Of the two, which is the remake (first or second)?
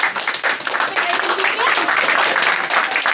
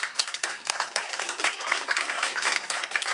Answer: second